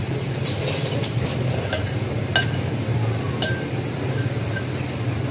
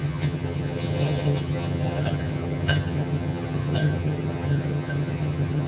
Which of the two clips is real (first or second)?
first